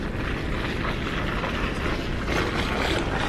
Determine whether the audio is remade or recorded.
recorded